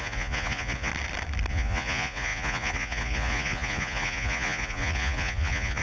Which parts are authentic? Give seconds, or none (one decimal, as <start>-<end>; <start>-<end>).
0.9-1.5